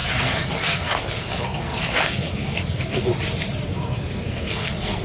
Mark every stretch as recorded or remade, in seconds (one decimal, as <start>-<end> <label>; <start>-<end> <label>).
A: 0.0-3.1 remade; 3.1-3.7 recorded; 3.7-5.0 remade